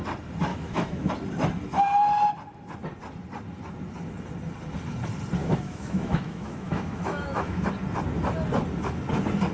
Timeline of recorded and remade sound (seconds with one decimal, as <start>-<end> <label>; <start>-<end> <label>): 0.0-0.5 recorded; 0.5-1.1 remade; 1.1-5.4 recorded; 5.4-7.6 remade; 7.6-9.5 recorded